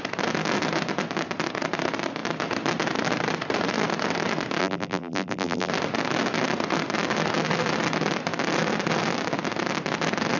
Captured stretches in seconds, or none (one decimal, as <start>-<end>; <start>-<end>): 0.0-4.6; 5.7-10.4